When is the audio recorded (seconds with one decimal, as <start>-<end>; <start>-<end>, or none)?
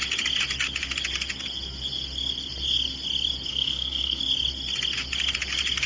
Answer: 0.0-3.5; 4.2-5.9